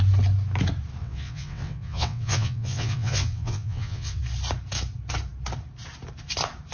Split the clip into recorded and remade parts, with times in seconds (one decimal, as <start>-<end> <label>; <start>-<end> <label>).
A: 0.0-1.0 recorded; 1.0-4.2 remade; 4.2-6.7 recorded